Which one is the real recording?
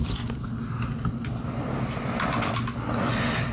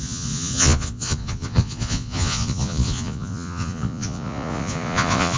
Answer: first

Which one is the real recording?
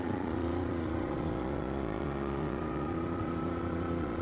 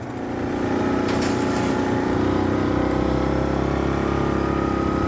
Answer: second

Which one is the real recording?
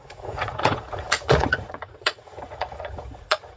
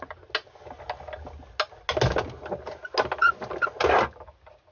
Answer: second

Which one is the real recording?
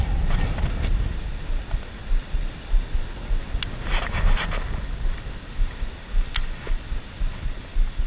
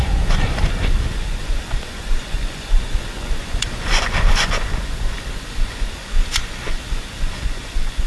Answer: first